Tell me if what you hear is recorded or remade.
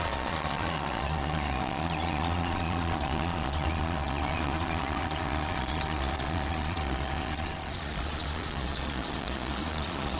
remade